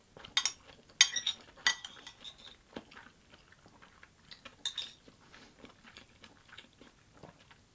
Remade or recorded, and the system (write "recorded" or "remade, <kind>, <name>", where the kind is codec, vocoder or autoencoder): recorded